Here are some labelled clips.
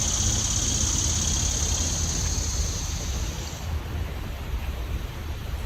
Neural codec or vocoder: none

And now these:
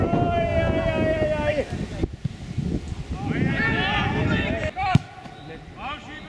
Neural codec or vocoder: none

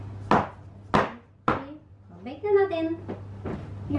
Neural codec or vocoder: none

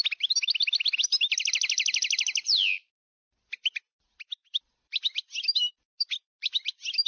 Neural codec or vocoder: none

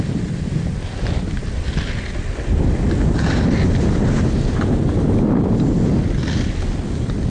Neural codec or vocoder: none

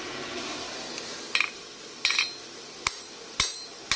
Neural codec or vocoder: none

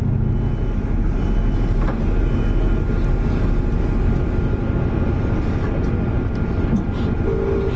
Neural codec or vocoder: none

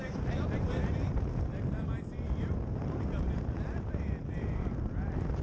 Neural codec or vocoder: vocoder, BigVGAN v2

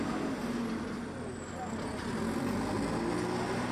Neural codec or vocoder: none